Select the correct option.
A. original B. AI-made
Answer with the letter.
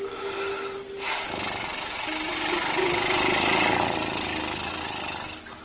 A